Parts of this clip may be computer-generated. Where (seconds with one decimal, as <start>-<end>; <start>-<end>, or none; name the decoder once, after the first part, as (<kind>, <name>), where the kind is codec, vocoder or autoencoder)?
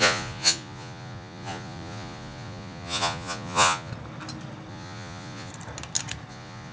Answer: 0.0-3.9 (vocoder, Vocos); 4.7-5.5; 6.3-6.7